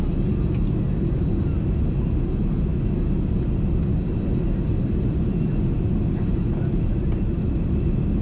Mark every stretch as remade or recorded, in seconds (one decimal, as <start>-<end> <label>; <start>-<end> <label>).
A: 0.0-8.2 recorded